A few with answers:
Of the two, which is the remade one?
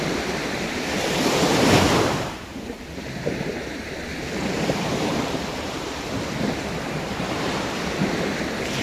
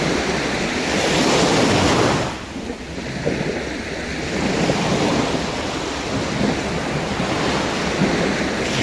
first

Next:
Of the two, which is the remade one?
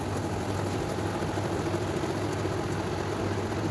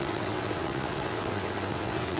second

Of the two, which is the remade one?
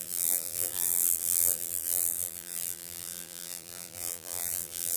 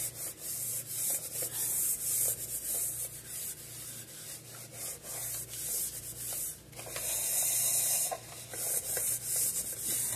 first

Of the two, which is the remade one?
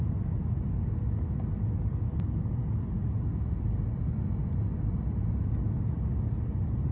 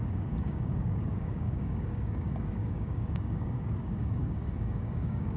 second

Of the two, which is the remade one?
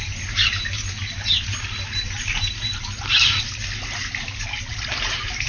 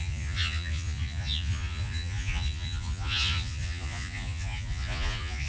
second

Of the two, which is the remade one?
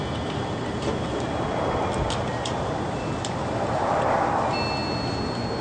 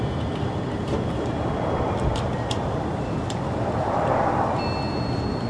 second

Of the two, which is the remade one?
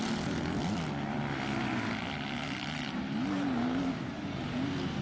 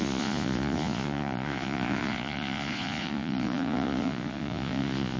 second